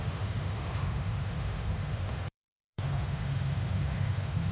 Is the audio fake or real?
fake